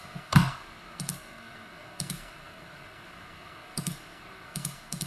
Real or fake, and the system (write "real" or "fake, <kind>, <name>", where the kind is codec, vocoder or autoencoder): fake, codec, SNAC